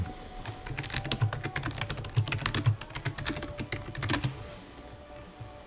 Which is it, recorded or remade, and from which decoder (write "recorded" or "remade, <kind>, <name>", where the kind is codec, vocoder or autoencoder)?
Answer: recorded